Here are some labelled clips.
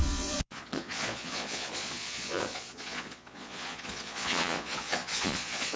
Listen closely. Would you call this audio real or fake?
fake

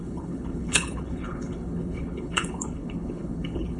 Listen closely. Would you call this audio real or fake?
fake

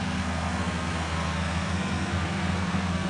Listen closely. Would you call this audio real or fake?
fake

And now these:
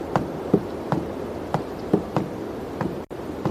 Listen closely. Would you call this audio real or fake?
fake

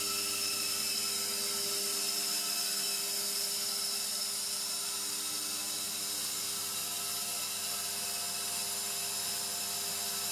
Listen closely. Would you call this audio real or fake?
real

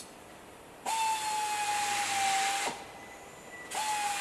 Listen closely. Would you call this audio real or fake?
real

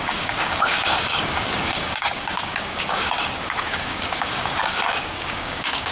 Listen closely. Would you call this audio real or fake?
fake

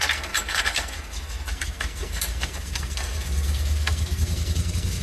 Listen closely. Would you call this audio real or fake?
fake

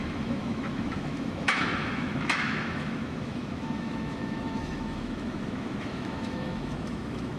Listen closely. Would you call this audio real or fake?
fake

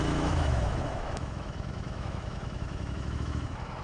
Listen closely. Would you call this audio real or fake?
fake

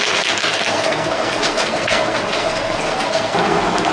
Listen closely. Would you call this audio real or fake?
fake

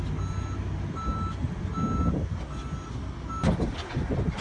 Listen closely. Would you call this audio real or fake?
real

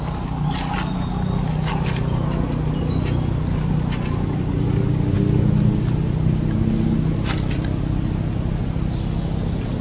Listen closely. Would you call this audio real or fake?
real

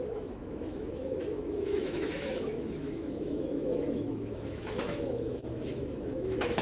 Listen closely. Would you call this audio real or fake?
fake